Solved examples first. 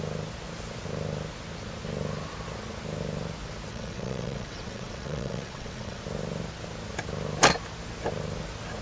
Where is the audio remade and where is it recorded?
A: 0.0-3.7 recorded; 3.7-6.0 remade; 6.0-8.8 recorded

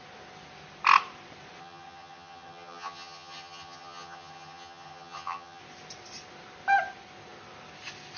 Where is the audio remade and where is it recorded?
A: 0.0-1.6 recorded; 1.6-5.6 remade; 5.6-8.2 recorded

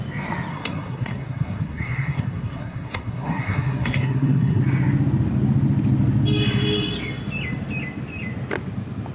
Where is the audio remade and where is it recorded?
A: 0.0-0.5 recorded; 0.5-4.6 remade; 4.6-9.1 recorded

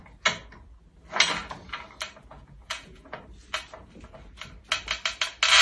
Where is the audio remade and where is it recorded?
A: 0.0-2.3 recorded; 2.3-3.2 remade; 3.2-5.6 recorded

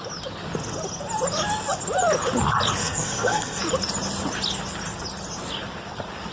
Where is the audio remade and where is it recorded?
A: 0.0-2.8 recorded; 2.8-3.6 remade; 3.6-6.3 recorded